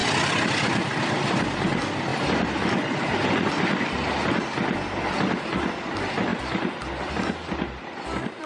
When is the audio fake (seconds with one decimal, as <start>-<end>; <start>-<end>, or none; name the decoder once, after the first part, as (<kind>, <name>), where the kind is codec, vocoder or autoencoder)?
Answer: none